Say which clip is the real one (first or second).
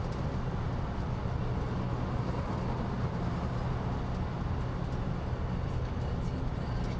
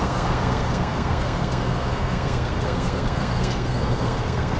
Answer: first